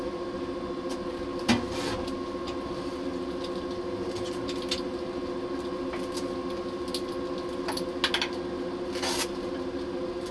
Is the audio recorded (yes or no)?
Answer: yes